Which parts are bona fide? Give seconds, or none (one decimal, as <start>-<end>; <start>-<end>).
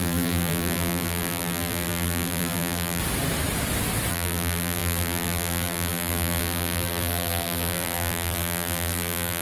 3.0-4.1